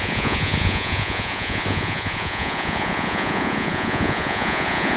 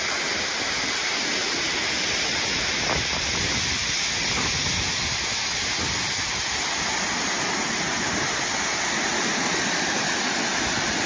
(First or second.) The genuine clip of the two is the second